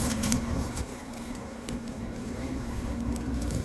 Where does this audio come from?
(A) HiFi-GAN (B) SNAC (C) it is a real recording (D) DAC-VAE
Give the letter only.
B